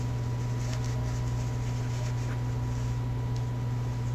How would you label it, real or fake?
real